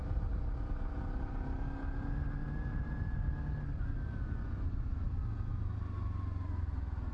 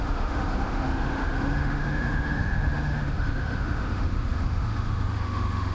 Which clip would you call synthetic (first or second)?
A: second